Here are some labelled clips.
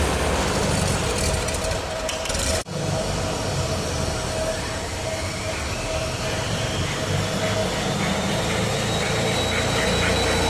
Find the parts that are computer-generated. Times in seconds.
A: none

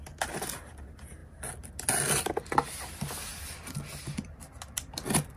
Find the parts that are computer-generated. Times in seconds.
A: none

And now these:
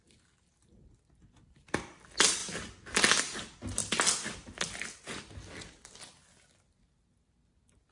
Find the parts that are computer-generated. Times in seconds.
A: none